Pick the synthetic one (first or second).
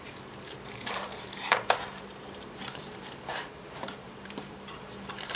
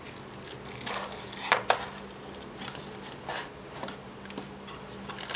first